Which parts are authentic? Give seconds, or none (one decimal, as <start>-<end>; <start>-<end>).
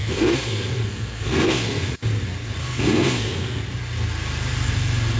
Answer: 2.0-2.6; 3.6-5.2